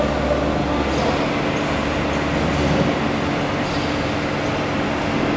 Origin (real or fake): real